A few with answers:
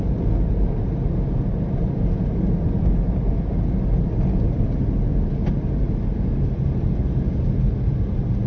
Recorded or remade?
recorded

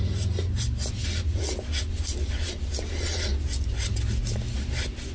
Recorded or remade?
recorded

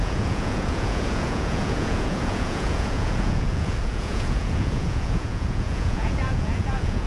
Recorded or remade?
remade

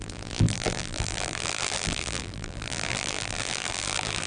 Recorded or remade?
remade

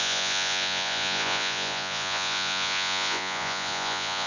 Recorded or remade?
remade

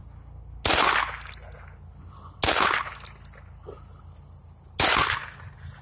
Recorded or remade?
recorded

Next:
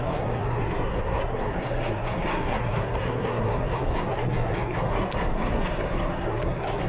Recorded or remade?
remade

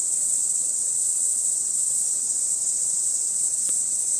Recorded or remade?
remade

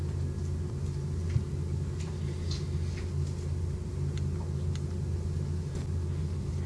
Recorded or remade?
recorded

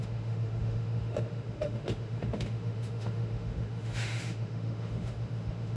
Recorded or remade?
remade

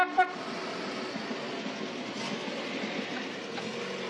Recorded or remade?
recorded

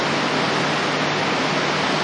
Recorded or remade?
recorded